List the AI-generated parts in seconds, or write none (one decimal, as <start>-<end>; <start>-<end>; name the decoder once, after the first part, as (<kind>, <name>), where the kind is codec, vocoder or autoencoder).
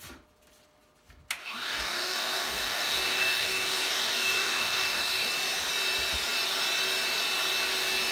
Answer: 1.4-5.3 (codec, DAC)